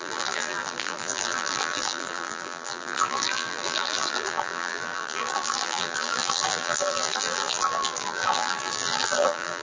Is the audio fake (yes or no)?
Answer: yes